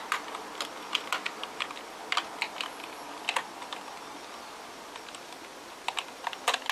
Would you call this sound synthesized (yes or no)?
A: no